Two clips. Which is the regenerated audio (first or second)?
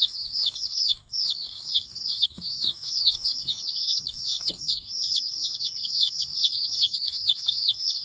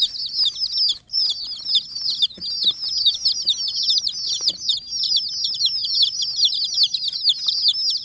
first